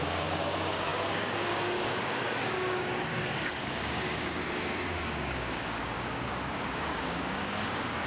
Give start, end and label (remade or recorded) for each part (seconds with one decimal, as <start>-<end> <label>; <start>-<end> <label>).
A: 0.0-8.1 remade